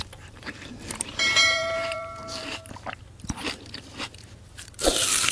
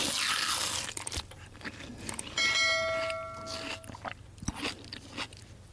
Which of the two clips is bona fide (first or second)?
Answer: second